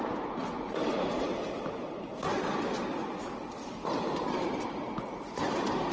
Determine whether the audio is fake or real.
real